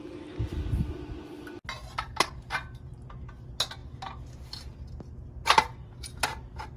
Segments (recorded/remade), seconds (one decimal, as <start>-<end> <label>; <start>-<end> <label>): 0.0-1.8 recorded; 1.8-2.3 remade; 2.3-6.8 recorded